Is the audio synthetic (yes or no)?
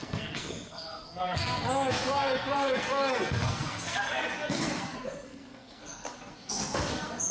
yes